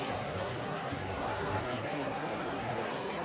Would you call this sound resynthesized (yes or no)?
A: yes